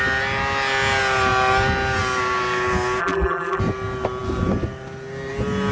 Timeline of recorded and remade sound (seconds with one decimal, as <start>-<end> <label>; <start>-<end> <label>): 0.0-3.0 recorded; 3.0-3.6 remade; 3.6-5.7 recorded